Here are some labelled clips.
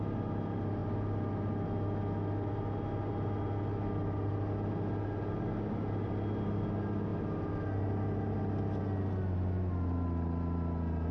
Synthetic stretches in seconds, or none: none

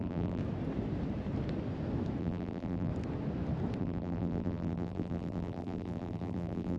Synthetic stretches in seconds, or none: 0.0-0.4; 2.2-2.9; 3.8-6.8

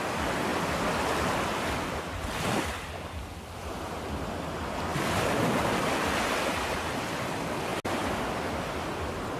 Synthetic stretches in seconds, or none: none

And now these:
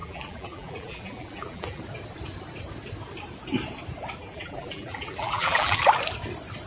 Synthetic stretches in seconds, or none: 0.0-1.8; 4.2-5.8